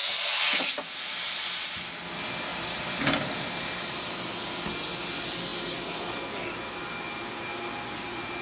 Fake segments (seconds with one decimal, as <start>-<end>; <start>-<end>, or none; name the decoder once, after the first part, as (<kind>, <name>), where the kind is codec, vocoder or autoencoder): 2.5-4.2 (vocoder, BigVGAN v2)